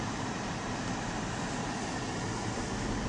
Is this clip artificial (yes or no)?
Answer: no